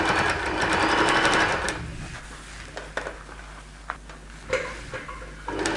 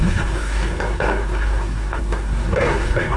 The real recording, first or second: first